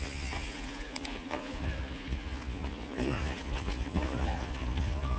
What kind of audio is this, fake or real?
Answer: fake